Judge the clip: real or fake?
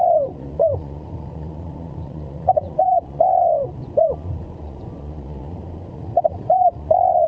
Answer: fake